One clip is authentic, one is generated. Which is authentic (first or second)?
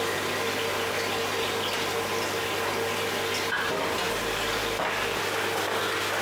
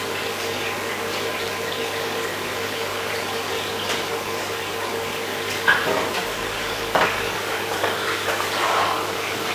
first